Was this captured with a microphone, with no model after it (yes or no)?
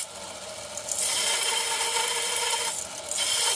yes